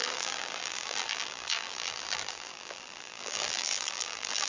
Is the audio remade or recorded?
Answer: remade